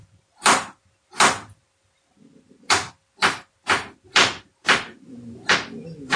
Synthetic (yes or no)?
no